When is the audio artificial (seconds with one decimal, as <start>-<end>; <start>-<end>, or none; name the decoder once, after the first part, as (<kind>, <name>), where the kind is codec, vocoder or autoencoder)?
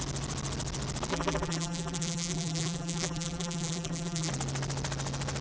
1.1-4.3 (vocoder, BigVGAN v2)